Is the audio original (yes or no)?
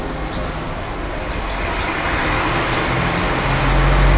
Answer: yes